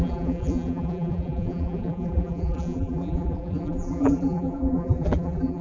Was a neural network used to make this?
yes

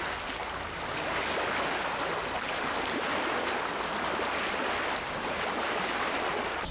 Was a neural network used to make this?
no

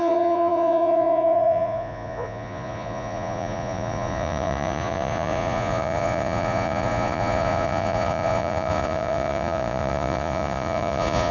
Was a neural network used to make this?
yes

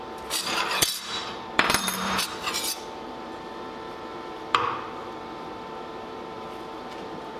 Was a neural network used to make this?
yes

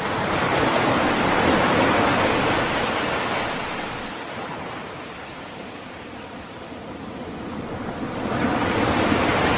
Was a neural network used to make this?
no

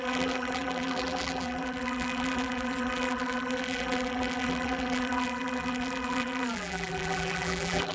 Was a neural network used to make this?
yes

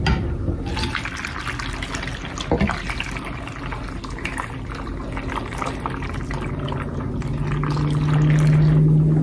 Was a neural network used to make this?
no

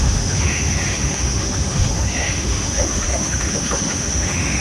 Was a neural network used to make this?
yes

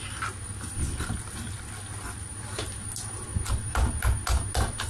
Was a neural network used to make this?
no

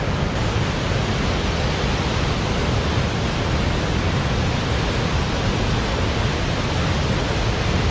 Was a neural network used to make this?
no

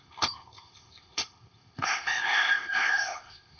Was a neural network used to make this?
yes